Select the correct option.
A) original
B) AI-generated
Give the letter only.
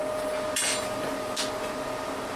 A